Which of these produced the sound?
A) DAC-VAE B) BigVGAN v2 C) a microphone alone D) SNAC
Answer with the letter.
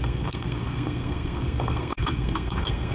D